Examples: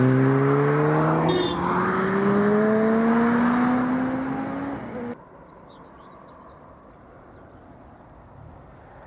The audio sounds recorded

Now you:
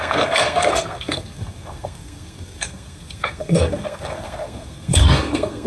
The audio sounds remade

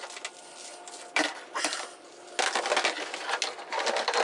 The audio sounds recorded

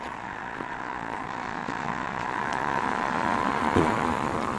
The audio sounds remade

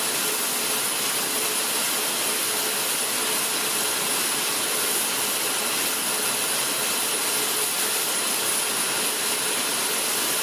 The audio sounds recorded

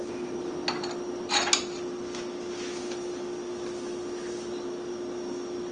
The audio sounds recorded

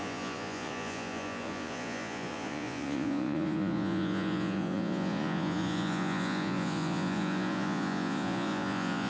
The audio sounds remade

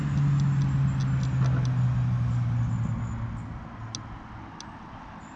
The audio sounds recorded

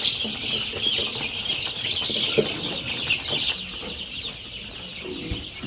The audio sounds recorded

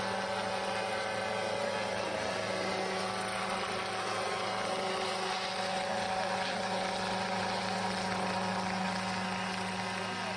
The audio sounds recorded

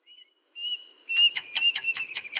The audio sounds remade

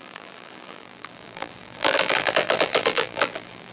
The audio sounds remade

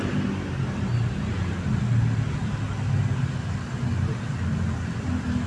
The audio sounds recorded